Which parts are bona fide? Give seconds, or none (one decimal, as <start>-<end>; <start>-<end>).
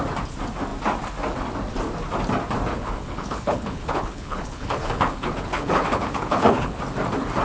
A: 0.0-2.7; 6.8-7.4